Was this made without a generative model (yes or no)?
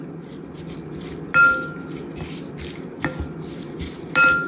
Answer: yes